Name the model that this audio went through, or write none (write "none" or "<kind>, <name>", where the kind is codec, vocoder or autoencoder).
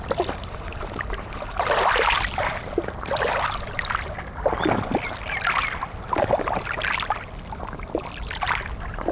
none